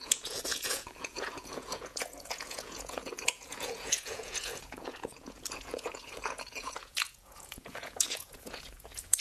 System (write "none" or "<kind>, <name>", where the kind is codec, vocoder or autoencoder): vocoder, Vocos